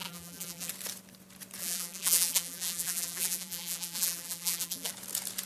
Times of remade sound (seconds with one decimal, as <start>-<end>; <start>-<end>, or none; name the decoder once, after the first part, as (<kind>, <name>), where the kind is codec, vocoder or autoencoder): 0.0-0.7 (vocoder, BigVGAN v2); 1.6-4.9